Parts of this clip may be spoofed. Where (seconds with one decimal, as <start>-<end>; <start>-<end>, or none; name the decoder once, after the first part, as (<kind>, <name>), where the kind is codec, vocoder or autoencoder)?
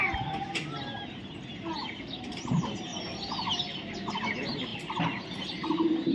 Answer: 1.8-2.9 (vocoder, BigVGAN v2); 3.6-4.7; 5.5-6.1